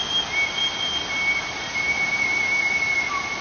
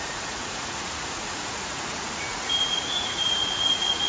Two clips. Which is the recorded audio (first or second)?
first